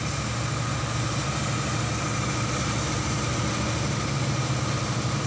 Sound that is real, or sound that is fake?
real